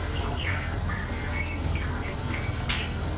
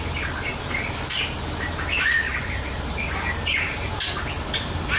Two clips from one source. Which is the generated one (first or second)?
first